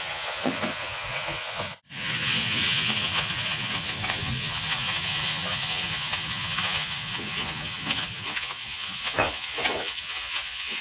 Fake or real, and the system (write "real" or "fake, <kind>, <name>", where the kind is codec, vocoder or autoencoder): fake, vocoder, Vocos